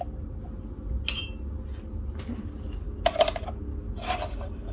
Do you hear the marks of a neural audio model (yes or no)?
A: no